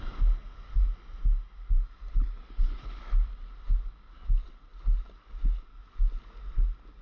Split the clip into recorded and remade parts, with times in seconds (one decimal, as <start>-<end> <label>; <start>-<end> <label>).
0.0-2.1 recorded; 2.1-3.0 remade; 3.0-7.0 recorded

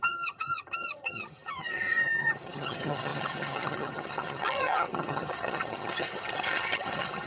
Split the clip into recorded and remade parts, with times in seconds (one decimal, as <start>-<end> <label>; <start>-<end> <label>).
0.0-7.3 remade

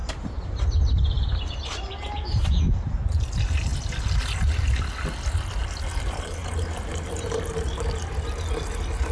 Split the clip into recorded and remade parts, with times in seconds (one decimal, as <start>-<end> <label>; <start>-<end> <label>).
0.0-1.5 remade; 1.5-6.4 recorded; 6.4-7.9 remade; 7.9-9.1 recorded

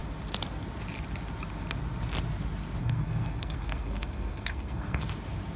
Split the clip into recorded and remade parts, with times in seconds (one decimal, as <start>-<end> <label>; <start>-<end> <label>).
0.0-2.8 recorded; 2.8-5.0 remade; 5.0-5.6 recorded